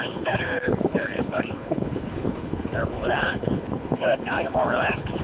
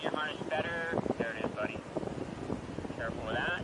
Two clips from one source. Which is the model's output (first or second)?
first